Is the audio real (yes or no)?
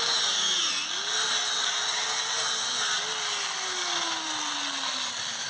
yes